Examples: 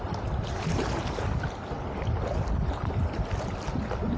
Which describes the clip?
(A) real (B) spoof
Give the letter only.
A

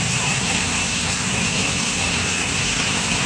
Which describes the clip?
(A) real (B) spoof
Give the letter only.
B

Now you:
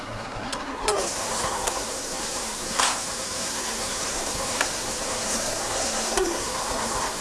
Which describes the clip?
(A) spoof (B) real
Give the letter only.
A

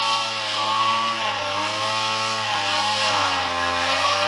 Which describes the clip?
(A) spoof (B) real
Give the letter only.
A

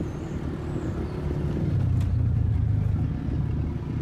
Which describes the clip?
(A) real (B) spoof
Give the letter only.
A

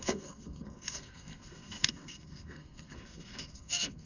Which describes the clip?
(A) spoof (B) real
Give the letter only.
A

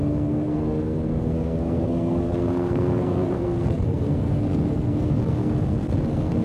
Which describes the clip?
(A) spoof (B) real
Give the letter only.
A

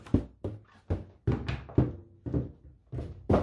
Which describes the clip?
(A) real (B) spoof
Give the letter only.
A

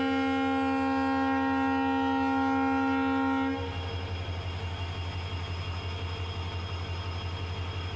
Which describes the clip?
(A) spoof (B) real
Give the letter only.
B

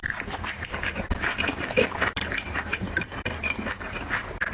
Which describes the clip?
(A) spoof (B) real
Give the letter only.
B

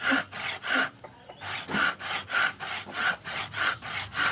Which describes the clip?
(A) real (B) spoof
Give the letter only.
A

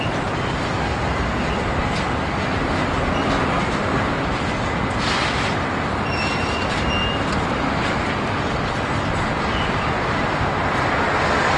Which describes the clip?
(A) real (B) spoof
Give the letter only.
A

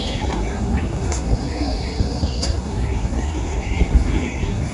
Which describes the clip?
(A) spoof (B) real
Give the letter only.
A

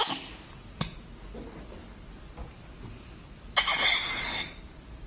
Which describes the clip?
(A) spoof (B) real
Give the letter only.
B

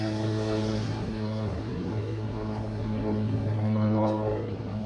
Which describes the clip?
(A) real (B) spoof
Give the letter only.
B